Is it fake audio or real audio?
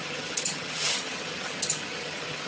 fake